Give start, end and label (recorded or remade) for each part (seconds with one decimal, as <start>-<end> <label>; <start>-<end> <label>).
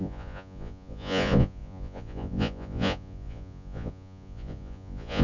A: 0.0-5.2 remade